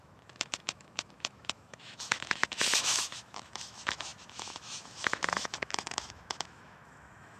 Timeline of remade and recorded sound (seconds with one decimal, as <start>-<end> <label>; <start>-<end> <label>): 0.0-7.4 remade